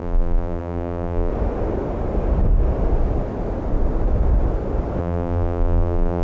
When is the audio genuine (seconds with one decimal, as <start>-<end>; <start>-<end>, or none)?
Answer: 1.3-5.0